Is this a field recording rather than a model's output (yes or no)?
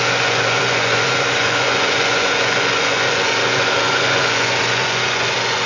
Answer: no